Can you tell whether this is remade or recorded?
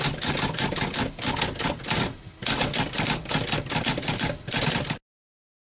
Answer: recorded